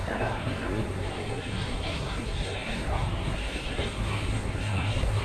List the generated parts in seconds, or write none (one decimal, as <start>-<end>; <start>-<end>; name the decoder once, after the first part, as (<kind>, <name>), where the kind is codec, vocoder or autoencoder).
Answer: 0.0-5.2 (codec, SNAC)